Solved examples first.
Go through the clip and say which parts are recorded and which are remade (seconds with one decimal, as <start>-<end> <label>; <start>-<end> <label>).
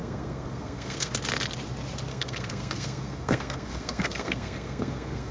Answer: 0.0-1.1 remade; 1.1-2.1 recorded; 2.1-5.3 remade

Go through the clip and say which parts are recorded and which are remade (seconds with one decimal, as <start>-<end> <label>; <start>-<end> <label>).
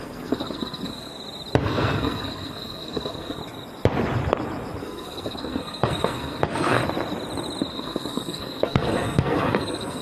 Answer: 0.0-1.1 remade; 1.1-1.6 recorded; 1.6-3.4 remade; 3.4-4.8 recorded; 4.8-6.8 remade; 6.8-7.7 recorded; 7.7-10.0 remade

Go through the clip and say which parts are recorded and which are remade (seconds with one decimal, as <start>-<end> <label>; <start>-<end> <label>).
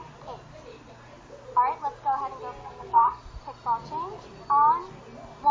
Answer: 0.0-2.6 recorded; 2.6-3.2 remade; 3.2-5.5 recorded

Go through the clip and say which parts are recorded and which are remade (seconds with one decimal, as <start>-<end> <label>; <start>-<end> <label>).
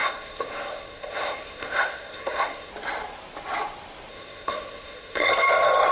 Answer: 0.0-2.7 remade; 2.7-4.1 recorded; 4.1-5.3 remade; 5.3-5.9 recorded